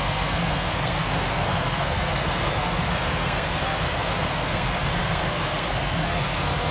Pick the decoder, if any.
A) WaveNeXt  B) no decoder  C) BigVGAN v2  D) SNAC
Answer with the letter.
D